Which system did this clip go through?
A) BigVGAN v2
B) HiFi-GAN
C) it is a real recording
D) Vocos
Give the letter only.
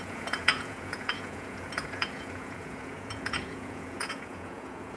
D